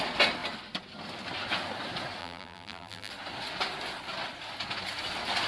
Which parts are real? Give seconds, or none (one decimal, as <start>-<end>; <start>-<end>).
0.0-2.2; 3.1-5.5